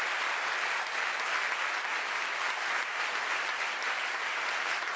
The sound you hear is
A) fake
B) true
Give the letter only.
B